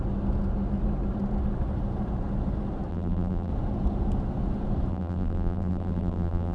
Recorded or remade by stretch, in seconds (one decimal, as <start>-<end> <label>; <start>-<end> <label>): 0.0-2.9 recorded; 2.9-3.5 remade; 3.5-4.9 recorded; 4.9-6.5 remade